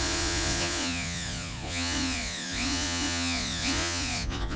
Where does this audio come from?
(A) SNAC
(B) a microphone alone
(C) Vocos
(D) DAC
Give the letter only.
C